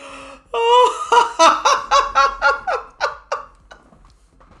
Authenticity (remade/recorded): recorded